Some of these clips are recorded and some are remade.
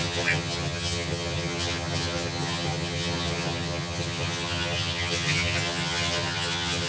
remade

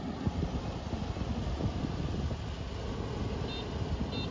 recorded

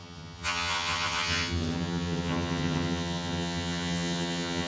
remade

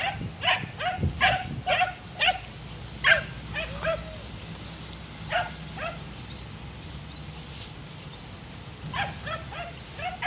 recorded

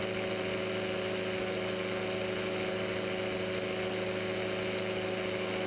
recorded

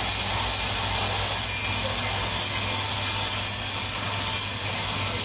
recorded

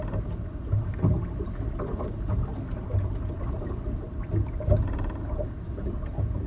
recorded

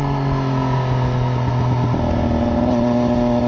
recorded